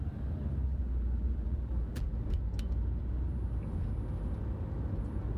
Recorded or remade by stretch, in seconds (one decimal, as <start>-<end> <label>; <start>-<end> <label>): 0.0-0.7 recorded; 0.7-2.1 remade; 2.1-5.4 recorded